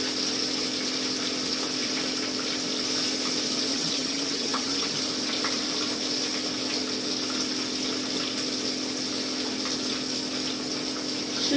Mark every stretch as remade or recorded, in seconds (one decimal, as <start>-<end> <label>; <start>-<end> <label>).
0.0-3.7 recorded; 3.7-5.0 remade; 5.0-11.6 recorded